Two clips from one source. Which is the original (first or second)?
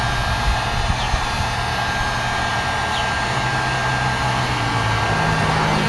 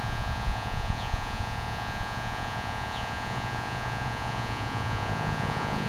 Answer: first